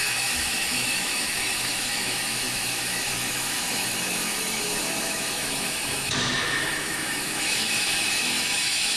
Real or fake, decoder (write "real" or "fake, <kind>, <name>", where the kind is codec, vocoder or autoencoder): fake, autoencoder, DAC-VAE